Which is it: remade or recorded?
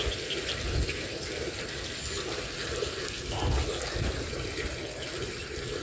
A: recorded